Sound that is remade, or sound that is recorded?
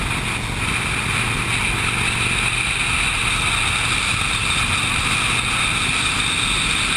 recorded